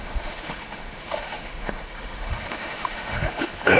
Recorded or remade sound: remade